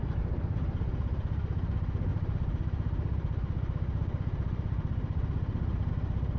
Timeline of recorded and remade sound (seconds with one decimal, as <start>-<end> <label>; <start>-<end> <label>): 0.0-6.4 remade